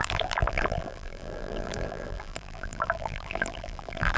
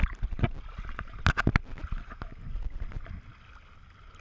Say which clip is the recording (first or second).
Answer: second